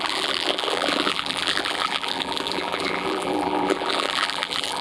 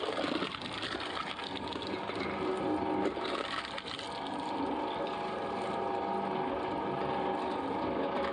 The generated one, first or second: first